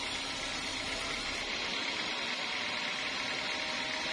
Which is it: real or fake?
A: real